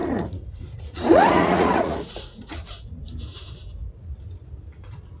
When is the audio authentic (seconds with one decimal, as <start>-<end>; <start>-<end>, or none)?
3.0-5.2